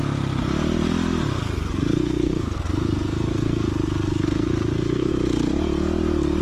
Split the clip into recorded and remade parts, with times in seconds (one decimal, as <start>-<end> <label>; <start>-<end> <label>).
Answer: 0.0-1.4 recorded; 1.4-5.1 remade; 5.1-6.4 recorded